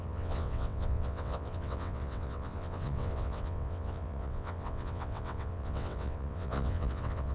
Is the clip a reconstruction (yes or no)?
yes